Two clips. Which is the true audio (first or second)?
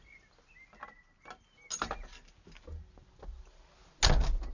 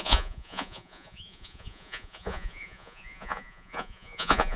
first